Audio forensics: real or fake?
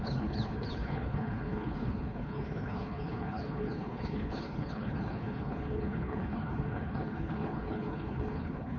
fake